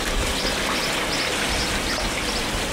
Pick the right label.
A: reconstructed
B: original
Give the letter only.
B